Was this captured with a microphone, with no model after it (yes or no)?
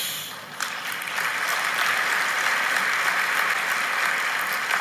yes